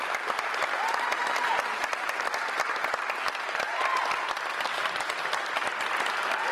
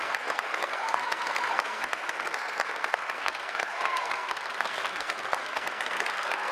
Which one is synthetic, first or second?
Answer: second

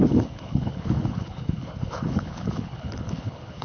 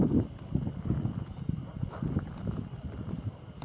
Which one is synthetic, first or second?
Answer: first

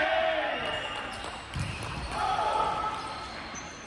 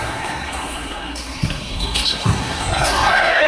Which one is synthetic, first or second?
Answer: second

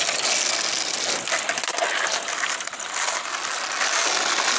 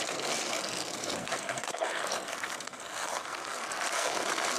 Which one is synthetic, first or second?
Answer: second